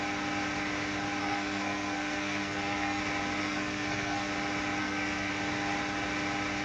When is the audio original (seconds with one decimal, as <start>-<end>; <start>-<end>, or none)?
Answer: 0.0-1.2; 3.0-3.4; 4.3-4.8; 5.3-6.6